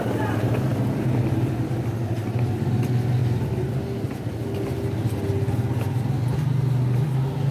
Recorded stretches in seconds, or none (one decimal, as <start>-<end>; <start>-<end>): 0.0-7.5